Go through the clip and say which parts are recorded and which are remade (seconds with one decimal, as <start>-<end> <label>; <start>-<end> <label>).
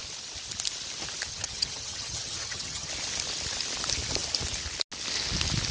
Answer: 0.0-1.3 recorded; 1.3-2.9 remade; 2.9-5.7 recorded